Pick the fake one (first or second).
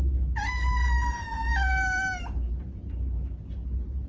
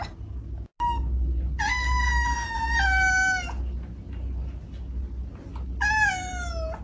first